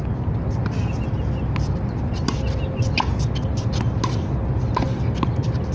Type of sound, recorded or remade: recorded